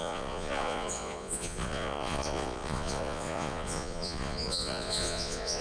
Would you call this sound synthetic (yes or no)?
yes